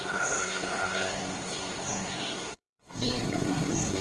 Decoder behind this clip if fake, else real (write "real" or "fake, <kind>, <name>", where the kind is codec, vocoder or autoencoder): fake, codec, SNAC